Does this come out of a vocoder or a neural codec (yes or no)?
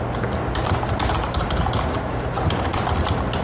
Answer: no